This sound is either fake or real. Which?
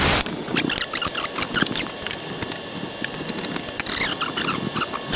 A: real